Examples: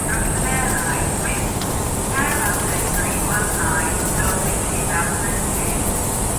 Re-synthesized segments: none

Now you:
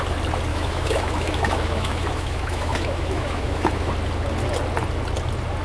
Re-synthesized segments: 0.5-3.9 (autoencoder, DAC-VAE)

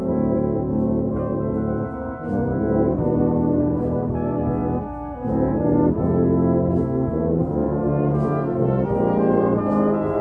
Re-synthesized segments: 3.6-4.1 (autoencoder, DAC-VAE)

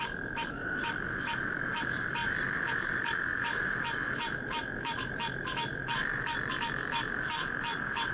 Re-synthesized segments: 0.0-8.1 (autoencoder, DAC-VAE)

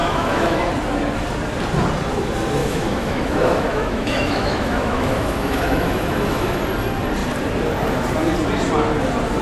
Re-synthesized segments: 0.0-0.6 (autoencoder, DAC-VAE); 2.6-6.6

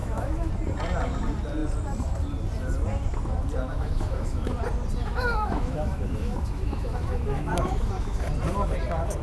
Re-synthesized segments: 0.0-0.5 (autoencoder, DAC-VAE); 3.7-4.6; 5.0-8.3

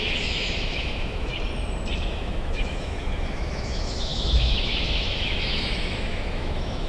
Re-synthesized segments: 0.0-1.3 (autoencoder, DAC-VAE); 2.1-6.9

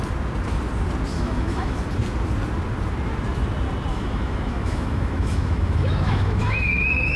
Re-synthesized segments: 1.1-1.8 (autoencoder, DAC-VAE); 3.9-7.2